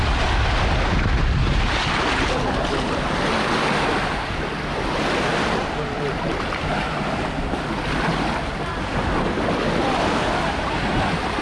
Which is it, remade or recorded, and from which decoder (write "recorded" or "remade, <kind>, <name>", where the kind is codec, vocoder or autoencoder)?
recorded